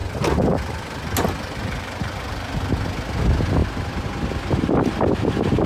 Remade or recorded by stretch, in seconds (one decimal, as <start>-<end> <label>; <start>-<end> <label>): 0.0-5.7 recorded